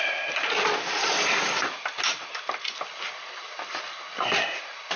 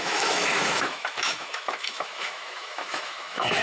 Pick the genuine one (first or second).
first